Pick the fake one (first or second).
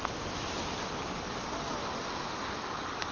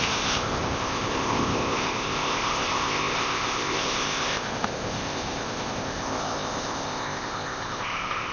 second